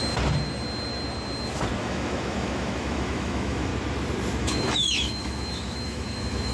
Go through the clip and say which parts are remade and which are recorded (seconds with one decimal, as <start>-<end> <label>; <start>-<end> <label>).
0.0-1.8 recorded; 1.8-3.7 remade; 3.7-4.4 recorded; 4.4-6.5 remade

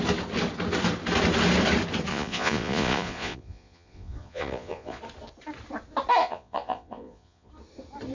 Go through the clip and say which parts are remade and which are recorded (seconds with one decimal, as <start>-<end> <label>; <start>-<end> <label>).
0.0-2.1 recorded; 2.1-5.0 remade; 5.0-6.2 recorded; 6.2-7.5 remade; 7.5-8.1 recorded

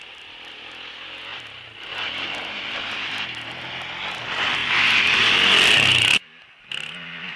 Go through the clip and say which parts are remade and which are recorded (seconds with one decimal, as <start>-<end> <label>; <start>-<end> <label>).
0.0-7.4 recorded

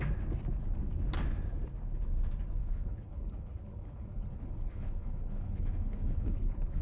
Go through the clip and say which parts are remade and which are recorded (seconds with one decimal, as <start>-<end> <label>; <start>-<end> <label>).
0.0-2.6 recorded; 2.6-6.8 remade